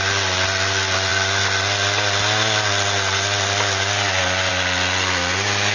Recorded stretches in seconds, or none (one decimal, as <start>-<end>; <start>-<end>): 0.0-5.7